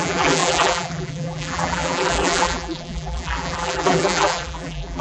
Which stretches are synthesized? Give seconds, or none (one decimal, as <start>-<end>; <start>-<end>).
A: 0.0-5.0